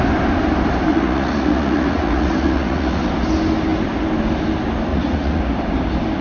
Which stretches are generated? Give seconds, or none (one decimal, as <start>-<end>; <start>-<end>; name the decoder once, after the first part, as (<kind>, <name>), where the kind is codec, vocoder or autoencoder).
0.9-3.1 (vocoder, Vocos); 4.9-5.4

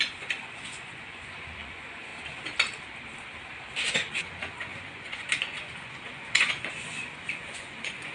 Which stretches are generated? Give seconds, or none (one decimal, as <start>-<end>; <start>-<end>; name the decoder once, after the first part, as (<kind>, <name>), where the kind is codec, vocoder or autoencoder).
0.0-2.1 (vocoder, Vocos); 3.9-8.1

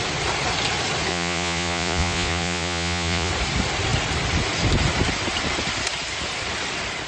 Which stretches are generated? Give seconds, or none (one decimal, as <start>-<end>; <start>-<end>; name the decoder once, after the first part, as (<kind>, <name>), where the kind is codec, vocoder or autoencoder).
1.1-3.3 (vocoder, Vocos)

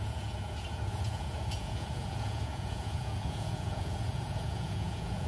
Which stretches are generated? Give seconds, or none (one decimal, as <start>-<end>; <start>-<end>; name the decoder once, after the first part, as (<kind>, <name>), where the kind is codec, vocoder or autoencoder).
0.0-5.3 (vocoder, Vocos)

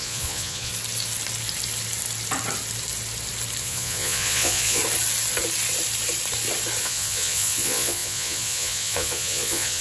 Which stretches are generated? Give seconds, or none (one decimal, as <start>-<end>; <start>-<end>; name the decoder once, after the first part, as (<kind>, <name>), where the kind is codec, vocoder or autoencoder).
0.0-0.7 (vocoder, Vocos); 3.6-4.8; 6.8-9.8

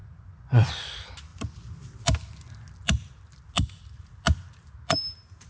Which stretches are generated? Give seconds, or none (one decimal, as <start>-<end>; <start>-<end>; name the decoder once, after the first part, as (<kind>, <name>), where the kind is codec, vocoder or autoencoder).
0.0-0.7 (vocoder, Vocos)

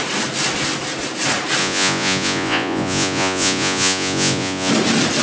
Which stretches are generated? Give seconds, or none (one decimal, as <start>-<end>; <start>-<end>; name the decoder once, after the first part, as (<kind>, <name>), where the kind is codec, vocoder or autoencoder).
1.6-4.7 (vocoder, Vocos)

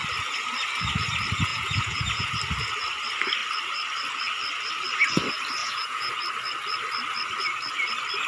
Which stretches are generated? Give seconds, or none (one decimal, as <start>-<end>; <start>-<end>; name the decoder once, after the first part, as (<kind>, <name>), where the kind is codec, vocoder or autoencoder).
1.5-2.3 (vocoder, Vocos); 5.6-6.1